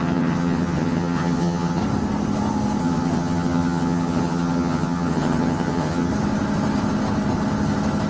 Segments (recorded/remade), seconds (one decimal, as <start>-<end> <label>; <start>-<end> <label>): 0.0-1.8 remade; 1.8-2.8 recorded; 2.8-6.1 remade; 6.1-8.1 recorded